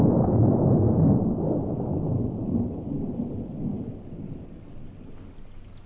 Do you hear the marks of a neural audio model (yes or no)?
no